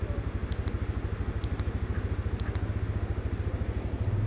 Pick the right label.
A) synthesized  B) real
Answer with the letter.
B